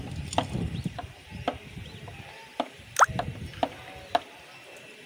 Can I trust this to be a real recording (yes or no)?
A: yes